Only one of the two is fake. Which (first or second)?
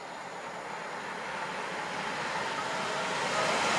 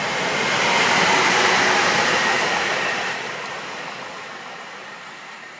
second